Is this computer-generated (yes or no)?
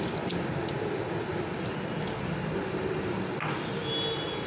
no